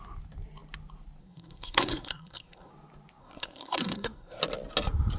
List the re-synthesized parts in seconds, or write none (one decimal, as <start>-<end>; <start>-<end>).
1.2-2.7; 3.2-4.4